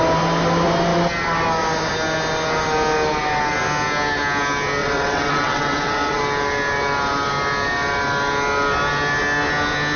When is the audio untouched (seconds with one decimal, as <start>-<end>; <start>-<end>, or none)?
0.0-4.8; 6.2-10.0

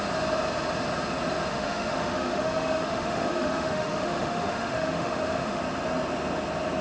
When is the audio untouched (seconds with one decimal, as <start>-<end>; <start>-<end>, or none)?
0.0-1.5; 5.6-6.8

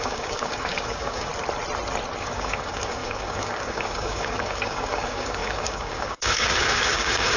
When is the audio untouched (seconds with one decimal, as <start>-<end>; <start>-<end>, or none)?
1.3-2.2

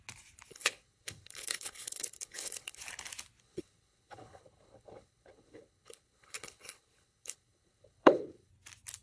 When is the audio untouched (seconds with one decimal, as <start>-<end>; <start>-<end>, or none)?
0.0-0.5; 2.8-3.4; 8.5-9.0